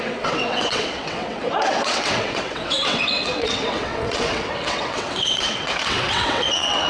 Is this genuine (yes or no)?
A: no